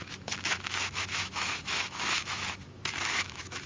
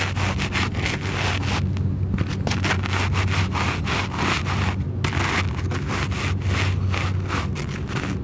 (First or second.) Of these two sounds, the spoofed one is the first